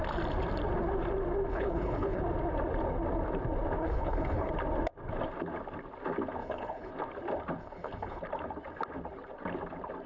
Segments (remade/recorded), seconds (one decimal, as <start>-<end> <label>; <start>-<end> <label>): 0.0-1.5 recorded; 1.5-2.2 remade; 2.2-3.8 recorded; 3.8-4.5 remade; 4.5-6.4 recorded; 6.4-6.9 remade; 6.9-7.6 recorded; 7.6-8.2 remade; 8.2-10.1 recorded